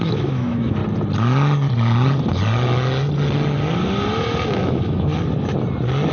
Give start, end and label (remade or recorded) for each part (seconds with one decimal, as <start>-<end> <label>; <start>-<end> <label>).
0.0-0.8 remade; 0.8-4.5 recorded; 4.5-5.1 remade; 5.1-6.1 recorded